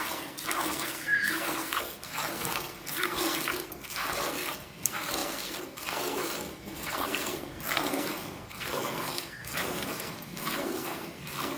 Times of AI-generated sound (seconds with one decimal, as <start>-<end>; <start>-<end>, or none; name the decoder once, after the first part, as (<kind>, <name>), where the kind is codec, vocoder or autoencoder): 0.0-11.6 (codec, SNAC)